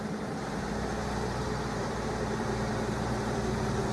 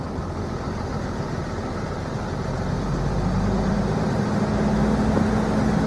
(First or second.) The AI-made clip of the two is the first